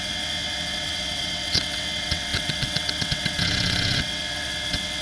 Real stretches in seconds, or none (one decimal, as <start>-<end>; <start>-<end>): none

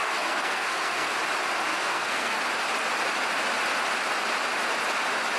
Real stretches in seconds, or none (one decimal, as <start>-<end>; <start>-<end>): 1.1-1.7; 2.4-5.4

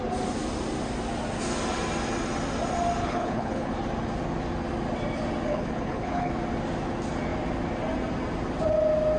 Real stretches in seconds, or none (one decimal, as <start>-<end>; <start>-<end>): 0.0-3.0; 3.7-5.5; 6.3-9.2